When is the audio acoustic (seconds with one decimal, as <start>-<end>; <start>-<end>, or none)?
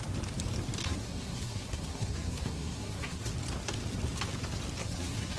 0.0-0.8; 3.3-4.8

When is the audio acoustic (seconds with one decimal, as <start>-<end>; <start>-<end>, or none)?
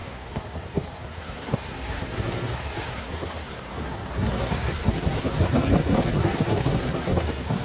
none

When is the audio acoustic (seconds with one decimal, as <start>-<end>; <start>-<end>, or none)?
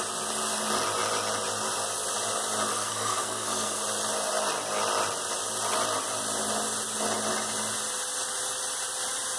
0.0-2.7; 3.8-9.4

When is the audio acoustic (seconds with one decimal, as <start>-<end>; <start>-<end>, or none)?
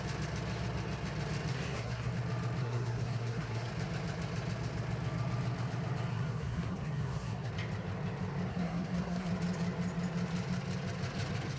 0.0-1.5; 2.1-2.6; 3.7-6.1; 7.5-8.5; 9.3-11.6